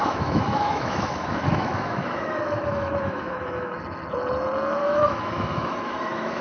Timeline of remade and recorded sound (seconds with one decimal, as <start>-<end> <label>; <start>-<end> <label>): 0.0-3.8 remade; 3.8-4.8 recorded; 4.8-6.4 remade